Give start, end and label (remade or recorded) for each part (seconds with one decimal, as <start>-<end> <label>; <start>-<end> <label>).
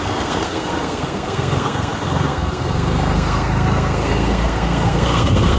0.0-5.6 remade